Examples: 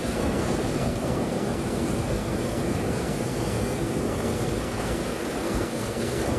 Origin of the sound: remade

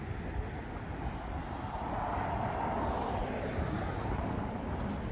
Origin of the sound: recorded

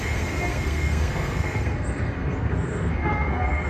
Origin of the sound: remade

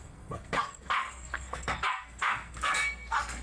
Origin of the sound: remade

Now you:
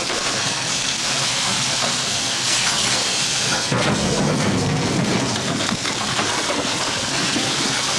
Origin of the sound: remade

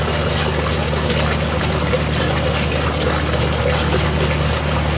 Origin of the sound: recorded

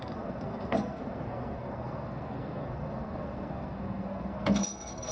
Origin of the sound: remade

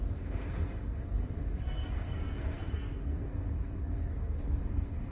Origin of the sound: remade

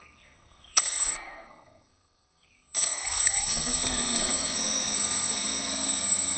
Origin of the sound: remade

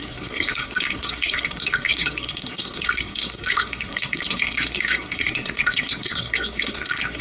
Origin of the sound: remade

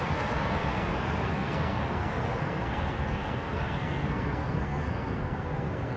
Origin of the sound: remade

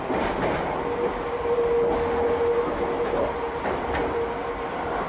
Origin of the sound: recorded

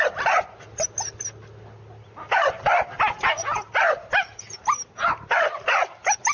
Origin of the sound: recorded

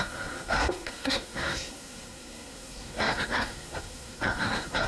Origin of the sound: remade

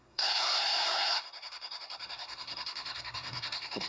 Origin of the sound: remade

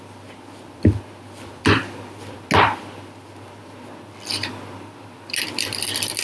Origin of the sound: recorded